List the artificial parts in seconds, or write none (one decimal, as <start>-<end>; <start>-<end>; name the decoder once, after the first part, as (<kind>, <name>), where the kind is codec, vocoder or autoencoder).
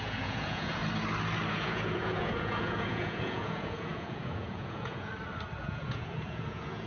0.0-0.8 (vocoder, Vocos); 1.5-5.1; 5.6-6.9